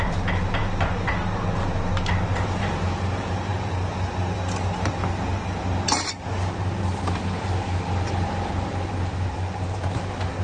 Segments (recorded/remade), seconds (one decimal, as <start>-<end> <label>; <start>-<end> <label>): 0.0-10.4 recorded